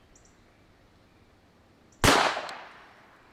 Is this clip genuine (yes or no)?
yes